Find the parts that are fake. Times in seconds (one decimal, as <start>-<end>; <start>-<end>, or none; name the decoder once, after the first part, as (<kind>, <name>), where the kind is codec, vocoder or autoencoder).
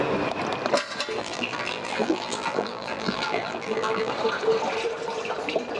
1.2-4.1 (vocoder, BigVGAN v2)